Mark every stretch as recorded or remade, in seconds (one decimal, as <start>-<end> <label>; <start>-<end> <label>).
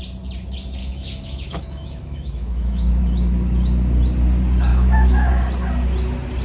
0.0-0.8 recorded; 0.8-3.0 remade; 3.0-4.7 recorded; 4.7-5.3 remade; 5.3-6.4 recorded